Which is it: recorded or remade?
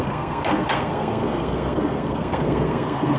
remade